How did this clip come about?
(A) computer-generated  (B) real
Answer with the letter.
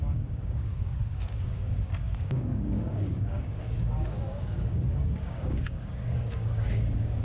A